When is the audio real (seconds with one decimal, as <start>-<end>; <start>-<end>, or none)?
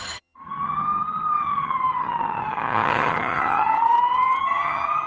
none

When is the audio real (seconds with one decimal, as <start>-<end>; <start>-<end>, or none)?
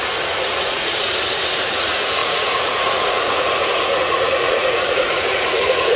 1.1-1.7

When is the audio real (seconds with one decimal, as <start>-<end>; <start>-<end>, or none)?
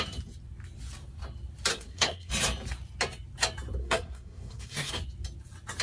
0.0-1.7; 2.3-3.8; 4.9-5.8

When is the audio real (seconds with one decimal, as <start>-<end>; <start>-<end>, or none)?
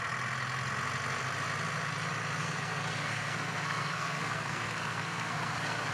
0.0-2.4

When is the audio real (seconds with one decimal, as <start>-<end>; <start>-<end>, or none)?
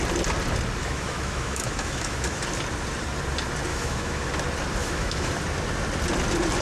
0.0-0.8; 2.4-3.7; 4.3-4.8; 5.3-6.6